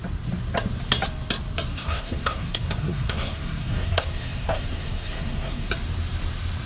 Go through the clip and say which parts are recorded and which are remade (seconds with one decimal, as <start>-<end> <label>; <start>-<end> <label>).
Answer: 0.0-1.7 recorded; 1.7-5.7 remade; 5.7-6.7 recorded